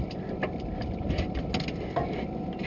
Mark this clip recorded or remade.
recorded